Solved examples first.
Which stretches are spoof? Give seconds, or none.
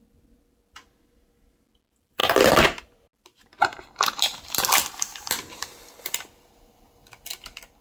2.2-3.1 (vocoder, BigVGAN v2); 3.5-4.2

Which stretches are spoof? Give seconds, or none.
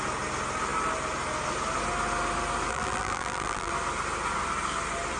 2.7-3.7 (vocoder, BigVGAN v2)